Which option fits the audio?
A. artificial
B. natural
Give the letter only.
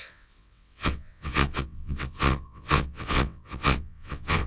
A